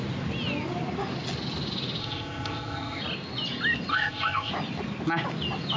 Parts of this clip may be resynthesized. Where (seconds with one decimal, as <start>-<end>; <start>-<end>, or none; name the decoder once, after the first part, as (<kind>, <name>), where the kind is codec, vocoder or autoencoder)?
2.0-3.0 (codec, ZipCodec); 3.9-4.5